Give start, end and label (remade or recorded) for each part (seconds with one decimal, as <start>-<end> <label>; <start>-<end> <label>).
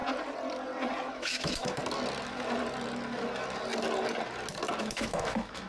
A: 0.0-1.1 recorded; 1.1-1.8 remade; 1.8-4.8 recorded; 4.8-5.7 remade